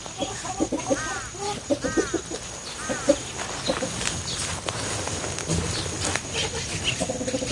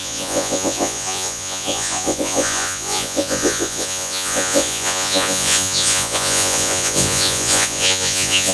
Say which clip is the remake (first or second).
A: second